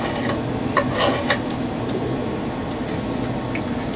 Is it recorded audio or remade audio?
recorded